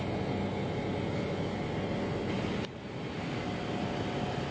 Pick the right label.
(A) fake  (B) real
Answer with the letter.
B